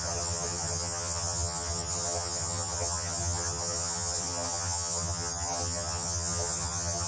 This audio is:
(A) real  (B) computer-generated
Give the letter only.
B